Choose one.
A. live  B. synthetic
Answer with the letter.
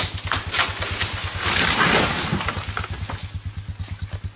A